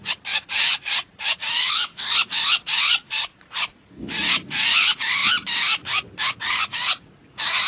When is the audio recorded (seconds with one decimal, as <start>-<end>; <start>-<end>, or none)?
5.2-6.3